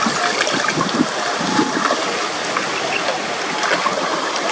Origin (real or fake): real